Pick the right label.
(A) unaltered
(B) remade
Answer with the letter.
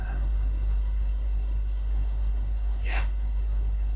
B